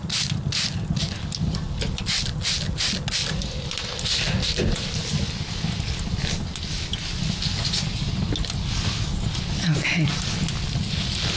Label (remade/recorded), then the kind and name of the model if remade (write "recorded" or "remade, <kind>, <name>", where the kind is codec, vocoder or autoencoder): recorded